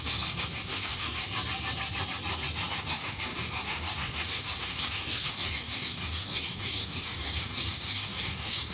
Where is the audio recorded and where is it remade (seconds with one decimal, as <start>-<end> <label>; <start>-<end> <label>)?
0.0-1.3 remade; 1.3-2.7 recorded; 2.7-8.7 remade